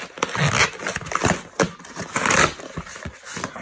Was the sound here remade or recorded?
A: recorded